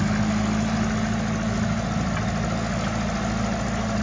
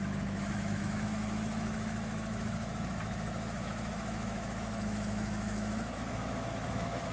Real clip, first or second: first